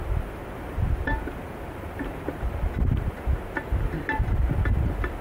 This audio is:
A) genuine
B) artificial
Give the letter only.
A